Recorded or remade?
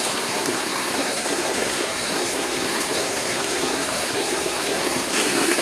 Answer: remade